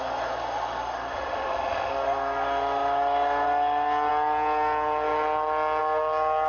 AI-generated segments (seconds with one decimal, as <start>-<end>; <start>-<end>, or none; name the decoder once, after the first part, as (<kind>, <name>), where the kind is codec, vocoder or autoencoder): 1.1-1.9 (autoencoder, DAC-VAE)